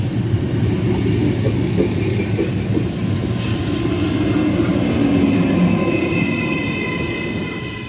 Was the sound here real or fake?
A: real